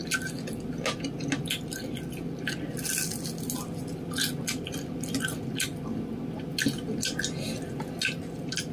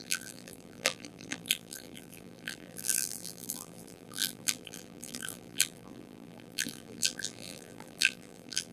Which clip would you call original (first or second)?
first